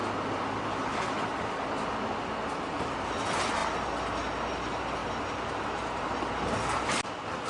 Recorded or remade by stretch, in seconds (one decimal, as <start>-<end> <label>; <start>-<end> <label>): 0.0-7.5 recorded